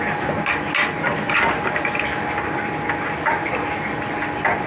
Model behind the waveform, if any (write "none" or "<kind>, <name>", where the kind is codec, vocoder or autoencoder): none